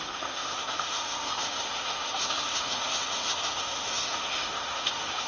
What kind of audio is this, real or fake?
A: fake